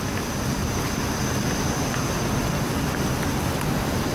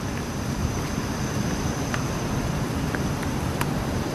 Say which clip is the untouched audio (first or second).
first